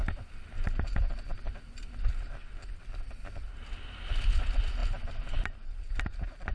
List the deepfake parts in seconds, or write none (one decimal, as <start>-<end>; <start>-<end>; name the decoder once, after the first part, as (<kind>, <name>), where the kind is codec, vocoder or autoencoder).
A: none